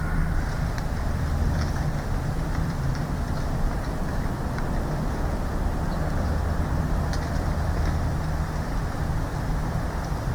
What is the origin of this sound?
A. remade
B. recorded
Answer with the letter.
A